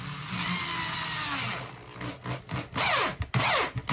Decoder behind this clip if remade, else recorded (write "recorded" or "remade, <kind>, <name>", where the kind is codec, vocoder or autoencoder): recorded